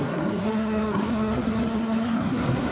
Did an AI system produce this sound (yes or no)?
yes